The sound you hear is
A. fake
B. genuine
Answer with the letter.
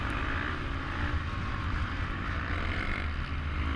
B